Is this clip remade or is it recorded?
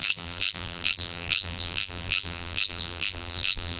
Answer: remade